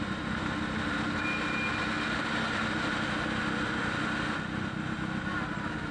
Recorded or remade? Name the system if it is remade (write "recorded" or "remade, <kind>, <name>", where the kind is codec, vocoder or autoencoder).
recorded